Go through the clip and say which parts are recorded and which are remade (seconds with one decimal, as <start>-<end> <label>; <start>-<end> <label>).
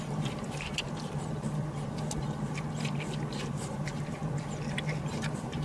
0.0-0.7 remade; 0.7-3.4 recorded; 3.4-4.2 remade; 4.2-5.1 recorded; 5.1-5.6 remade